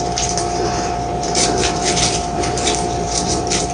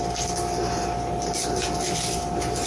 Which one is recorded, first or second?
second